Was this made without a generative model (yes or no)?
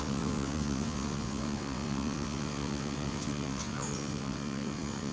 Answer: no